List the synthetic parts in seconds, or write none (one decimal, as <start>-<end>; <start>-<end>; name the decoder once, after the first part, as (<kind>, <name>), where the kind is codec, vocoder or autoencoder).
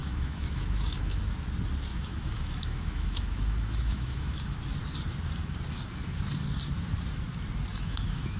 0.0-1.2 (autoencoder, DAC-VAE); 1.9-4.6; 7.7-8.4